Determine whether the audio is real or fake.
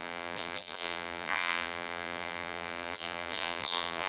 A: fake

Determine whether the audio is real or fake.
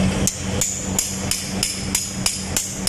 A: real